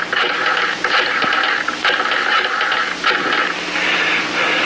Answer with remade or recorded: recorded